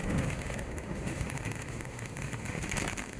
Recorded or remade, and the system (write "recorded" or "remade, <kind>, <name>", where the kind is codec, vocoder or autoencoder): remade, autoencoder, DAC-VAE